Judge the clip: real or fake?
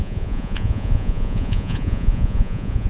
fake